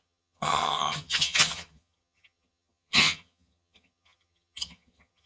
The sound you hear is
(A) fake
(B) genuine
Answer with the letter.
A